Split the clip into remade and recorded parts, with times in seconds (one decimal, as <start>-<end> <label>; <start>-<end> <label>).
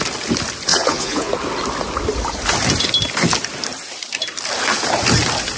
0.0-0.7 recorded; 0.7-1.3 remade; 1.3-5.6 recorded